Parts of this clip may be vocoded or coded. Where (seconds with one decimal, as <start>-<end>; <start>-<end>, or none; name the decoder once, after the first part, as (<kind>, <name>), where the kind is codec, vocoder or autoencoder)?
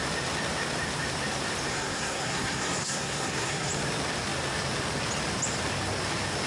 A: 1.7-3.7 (codec, SNAC)